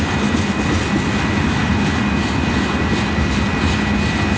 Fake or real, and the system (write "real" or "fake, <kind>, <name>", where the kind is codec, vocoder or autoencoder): real